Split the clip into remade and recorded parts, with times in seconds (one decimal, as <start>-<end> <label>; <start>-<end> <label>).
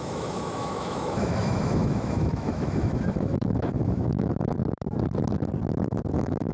0.0-4.6 remade; 4.6-6.1 recorded; 6.1-6.5 remade